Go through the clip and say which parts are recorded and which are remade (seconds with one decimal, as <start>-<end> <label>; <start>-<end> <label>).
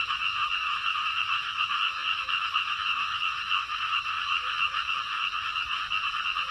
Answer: 0.0-6.5 remade